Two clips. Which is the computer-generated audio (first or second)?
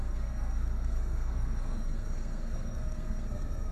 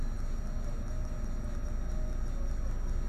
first